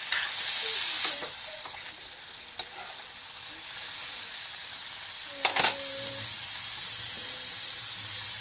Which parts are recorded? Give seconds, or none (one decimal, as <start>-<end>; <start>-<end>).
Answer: 0.0-8.4